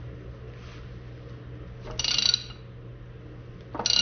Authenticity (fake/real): real